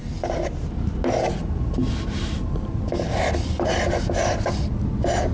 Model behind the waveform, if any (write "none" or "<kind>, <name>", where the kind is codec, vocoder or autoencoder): none